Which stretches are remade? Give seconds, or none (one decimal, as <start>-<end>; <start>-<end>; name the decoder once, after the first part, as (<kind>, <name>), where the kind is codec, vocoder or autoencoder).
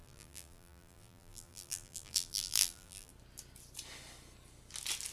0.0-3.1 (vocoder, BigVGAN v2)